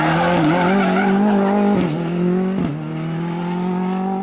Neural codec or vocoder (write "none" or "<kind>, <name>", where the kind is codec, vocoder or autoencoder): none